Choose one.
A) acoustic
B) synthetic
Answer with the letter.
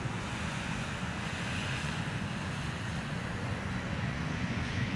B